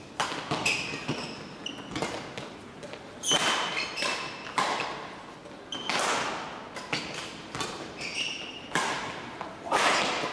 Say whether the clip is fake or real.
real